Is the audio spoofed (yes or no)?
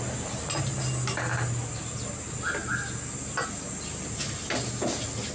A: no